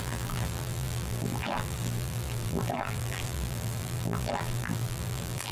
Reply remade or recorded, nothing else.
remade